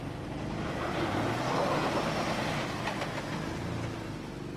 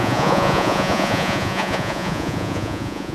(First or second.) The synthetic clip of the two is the second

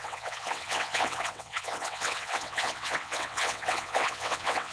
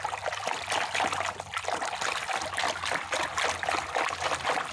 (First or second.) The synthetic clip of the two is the first